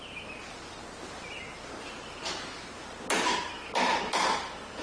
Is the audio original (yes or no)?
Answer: yes